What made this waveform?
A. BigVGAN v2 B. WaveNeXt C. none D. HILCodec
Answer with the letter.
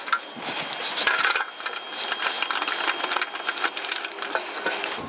C